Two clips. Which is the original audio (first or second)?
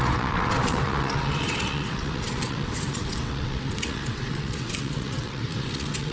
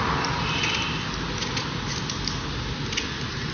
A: second